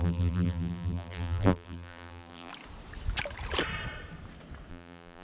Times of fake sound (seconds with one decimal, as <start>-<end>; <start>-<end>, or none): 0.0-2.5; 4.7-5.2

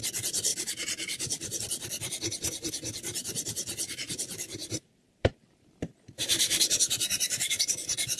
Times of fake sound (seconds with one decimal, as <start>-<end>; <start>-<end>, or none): 4.6-7.6

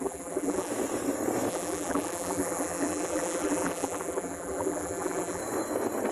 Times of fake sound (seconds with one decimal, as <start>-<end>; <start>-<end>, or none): 0.0-0.7; 1.5-5.4

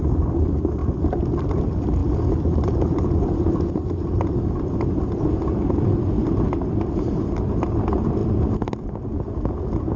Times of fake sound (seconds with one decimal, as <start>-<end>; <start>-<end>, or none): 0.0-10.0

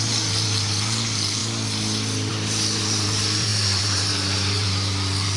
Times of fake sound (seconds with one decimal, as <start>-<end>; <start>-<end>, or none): 0.0-1.4; 2.3-5.4

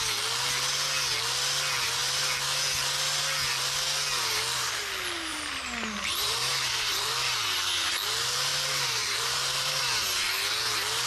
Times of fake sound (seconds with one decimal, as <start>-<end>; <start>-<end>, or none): 5.3-7.1; 8.5-9.8

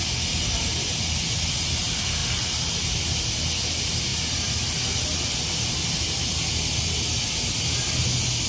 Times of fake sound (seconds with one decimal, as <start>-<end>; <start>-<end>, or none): none

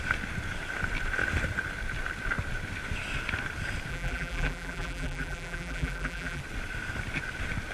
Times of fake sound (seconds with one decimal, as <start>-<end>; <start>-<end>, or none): 3.9-6.4